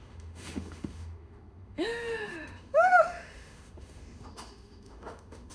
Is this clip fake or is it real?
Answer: fake